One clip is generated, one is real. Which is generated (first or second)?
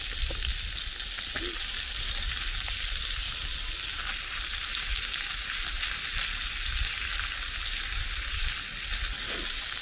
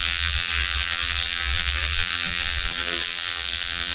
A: second